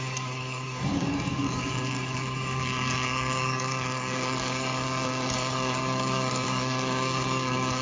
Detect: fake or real fake